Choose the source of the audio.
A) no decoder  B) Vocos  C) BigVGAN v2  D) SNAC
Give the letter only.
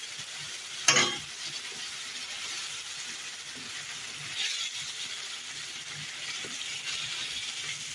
A